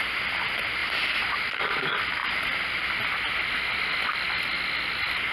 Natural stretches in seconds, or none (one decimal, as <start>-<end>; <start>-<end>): 0.0-5.3